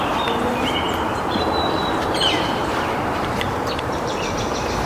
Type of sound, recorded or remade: remade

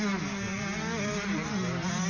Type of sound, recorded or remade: recorded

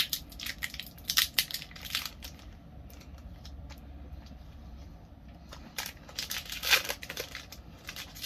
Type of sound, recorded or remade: remade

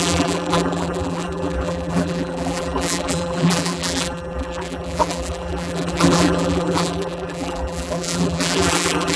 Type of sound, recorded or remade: remade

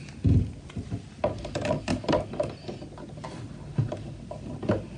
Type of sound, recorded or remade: recorded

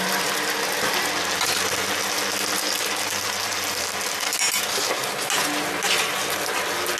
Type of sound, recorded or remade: recorded